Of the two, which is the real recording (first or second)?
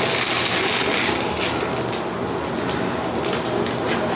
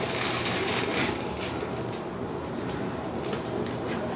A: first